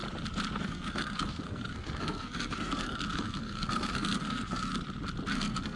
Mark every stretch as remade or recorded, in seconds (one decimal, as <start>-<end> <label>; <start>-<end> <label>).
0.0-0.6 recorded; 0.6-4.7 remade; 4.7-5.3 recorded; 5.3-5.8 remade